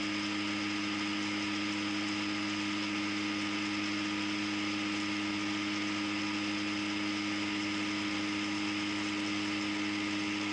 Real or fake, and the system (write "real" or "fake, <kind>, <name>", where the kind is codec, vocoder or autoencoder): real